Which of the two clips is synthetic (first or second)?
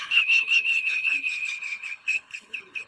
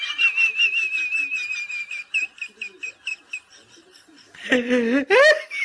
first